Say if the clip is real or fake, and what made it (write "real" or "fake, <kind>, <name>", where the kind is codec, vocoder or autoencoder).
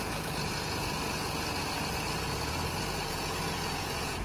fake, vocoder, Vocos